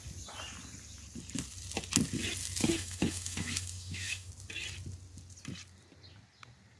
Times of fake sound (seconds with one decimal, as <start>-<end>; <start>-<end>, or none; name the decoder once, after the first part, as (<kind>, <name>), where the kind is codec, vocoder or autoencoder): 2.6-4.3 (autoencoder, DAC-VAE)

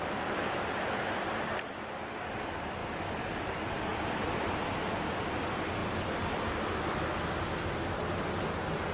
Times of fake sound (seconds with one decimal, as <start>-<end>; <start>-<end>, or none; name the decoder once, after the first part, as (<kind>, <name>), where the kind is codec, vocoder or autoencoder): 3.9-4.6 (vocoder, BigVGAN v2)